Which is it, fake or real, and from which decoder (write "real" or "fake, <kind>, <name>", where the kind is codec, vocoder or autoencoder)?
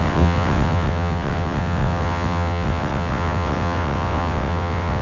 fake, vocoder, WaveNeXt